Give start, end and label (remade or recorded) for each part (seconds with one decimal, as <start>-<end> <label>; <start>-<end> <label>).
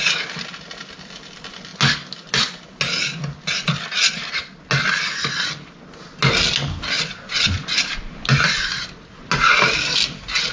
0.0-10.5 recorded